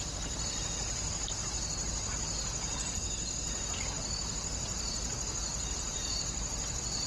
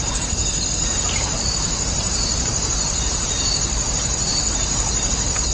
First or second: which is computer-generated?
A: second